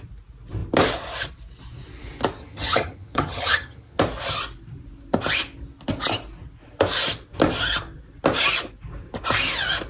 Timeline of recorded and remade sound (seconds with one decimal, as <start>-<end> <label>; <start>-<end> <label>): 0.0-2.4 recorded; 2.4-4.0 remade; 4.0-9.9 recorded